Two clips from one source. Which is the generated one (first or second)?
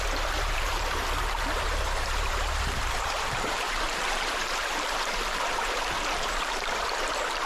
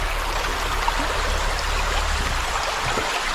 first